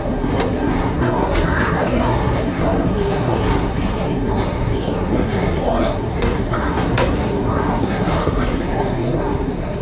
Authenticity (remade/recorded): remade